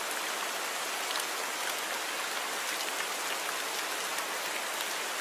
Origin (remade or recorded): recorded